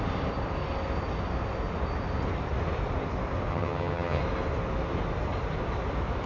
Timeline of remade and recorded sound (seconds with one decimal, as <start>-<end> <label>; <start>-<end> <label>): 0.0-3.5 recorded; 3.5-4.2 remade; 4.2-6.3 recorded